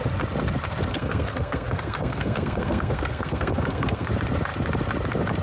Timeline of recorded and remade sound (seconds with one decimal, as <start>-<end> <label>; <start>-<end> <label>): 0.0-0.9 recorded; 0.9-4.1 remade; 4.1-5.4 recorded